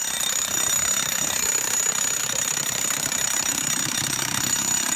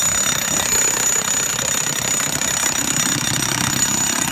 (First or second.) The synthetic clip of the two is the first